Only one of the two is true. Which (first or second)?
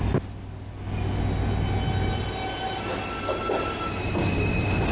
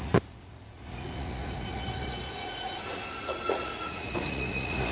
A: first